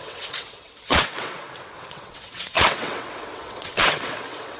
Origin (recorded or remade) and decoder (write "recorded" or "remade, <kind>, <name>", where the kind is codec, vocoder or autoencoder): remade, vocoder, WaveNeXt